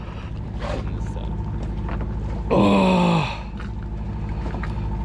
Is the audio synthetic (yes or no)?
no